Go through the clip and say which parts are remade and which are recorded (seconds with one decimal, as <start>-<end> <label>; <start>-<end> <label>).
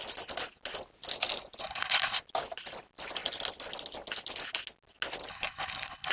0.0-1.6 recorded; 1.6-2.2 remade; 2.2-5.3 recorded; 5.3-6.1 remade